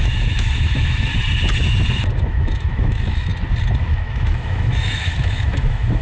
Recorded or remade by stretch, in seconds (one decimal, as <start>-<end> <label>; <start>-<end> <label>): 0.0-1.1 remade; 1.1-1.9 recorded; 1.9-3.3 remade; 3.3-3.9 recorded; 3.9-6.0 remade